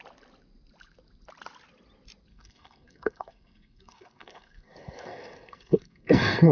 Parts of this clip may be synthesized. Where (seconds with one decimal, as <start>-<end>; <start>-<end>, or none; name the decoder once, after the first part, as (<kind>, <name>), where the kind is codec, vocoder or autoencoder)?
2.3-6.5 (codec, SNAC)